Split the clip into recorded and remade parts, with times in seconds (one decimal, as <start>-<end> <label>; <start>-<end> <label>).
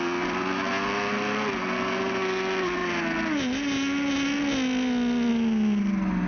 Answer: 0.0-6.3 recorded